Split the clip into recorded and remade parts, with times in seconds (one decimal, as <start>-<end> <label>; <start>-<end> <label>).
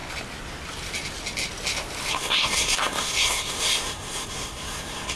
0.0-2.1 recorded; 2.1-5.2 remade